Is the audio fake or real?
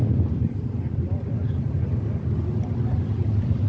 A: real